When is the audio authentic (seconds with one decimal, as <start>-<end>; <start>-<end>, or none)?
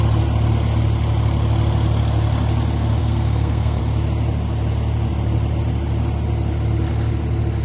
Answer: 0.0-3.0; 3.8-7.6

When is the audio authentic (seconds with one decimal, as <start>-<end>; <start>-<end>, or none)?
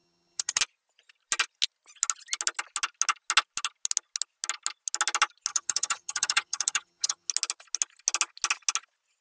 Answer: 0.6-5.5; 7.3-9.2